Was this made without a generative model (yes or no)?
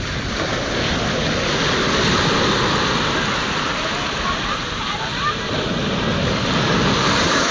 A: yes